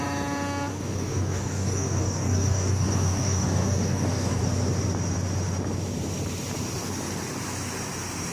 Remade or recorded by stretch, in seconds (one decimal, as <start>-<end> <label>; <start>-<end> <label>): 0.0-0.7 recorded; 0.7-4.4 remade; 4.4-8.3 recorded